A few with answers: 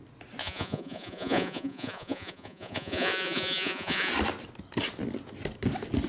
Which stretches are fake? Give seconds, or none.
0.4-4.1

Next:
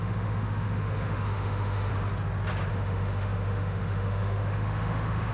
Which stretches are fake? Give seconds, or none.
0.0-1.9; 2.7-5.3

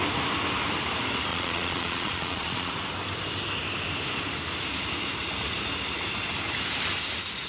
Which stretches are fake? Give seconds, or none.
1.3-2.7